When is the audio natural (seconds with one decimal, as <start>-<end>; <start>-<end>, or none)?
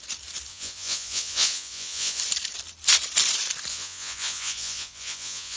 0.0-0.5; 2.2-3.7